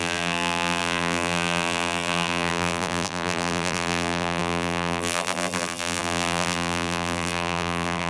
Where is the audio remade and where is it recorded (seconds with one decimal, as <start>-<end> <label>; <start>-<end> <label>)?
0.0-8.1 remade